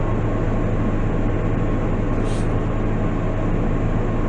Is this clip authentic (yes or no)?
yes